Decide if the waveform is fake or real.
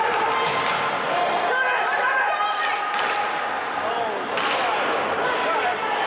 real